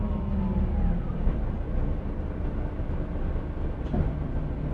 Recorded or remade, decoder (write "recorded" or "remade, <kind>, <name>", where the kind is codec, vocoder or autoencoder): recorded